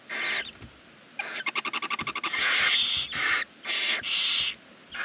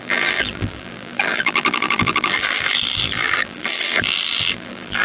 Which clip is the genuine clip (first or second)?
first